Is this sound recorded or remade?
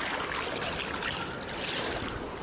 recorded